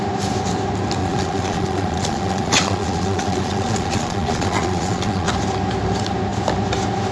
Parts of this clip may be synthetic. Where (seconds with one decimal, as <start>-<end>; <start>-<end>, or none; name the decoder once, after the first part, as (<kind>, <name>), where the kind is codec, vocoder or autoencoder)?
1.0-5.3 (vocoder, Vocos)